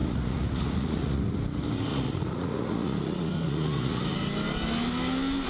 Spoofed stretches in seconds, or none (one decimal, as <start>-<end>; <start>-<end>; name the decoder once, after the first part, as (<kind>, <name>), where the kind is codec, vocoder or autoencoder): 0.0-1.2 (vocoder, Vocos); 1.9-4.0